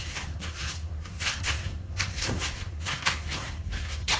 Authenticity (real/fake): fake